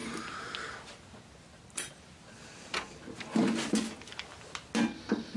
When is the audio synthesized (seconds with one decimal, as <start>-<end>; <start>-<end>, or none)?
none

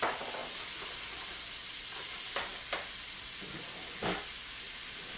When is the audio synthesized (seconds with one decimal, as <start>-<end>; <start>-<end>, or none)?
none

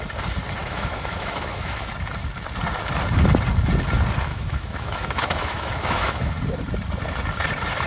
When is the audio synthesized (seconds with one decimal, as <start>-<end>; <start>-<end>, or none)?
0.6-1.9; 4.3-6.3

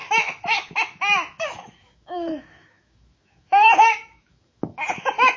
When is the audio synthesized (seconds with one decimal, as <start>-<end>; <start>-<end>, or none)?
0.0-5.4